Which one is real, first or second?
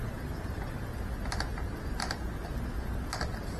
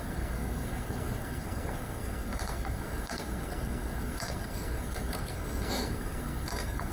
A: first